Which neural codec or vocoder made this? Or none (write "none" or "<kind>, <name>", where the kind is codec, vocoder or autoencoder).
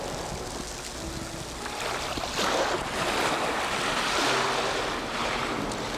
none